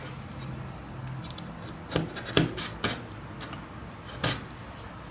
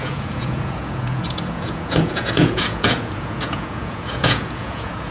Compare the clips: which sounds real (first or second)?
first